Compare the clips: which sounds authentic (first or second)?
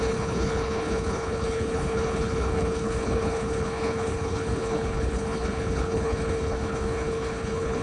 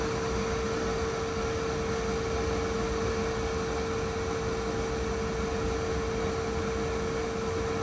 second